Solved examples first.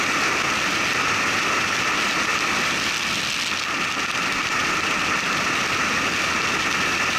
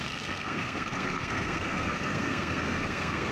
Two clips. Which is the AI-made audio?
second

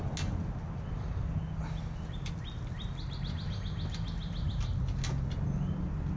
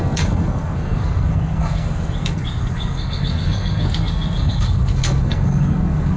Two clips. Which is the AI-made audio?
second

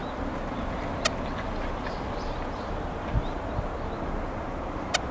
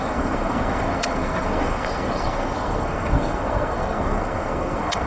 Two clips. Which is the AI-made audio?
second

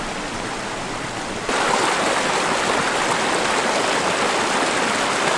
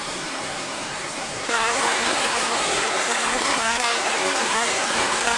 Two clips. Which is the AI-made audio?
second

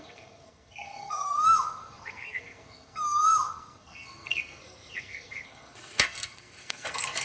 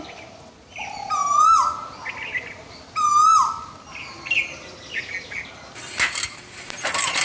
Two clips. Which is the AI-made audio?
first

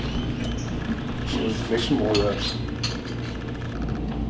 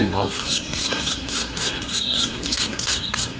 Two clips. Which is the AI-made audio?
second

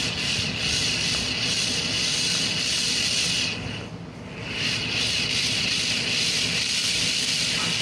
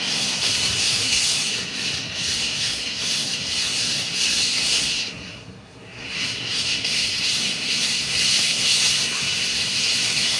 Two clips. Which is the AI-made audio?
second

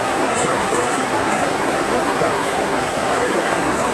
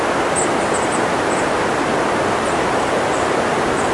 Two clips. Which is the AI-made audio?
first